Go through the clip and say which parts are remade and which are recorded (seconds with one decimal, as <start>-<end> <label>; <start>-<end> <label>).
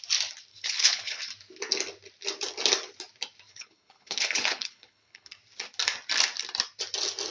0.0-0.5 recorded; 0.5-1.2 remade; 1.2-3.5 recorded; 3.5-5.4 remade; 5.4-7.3 recorded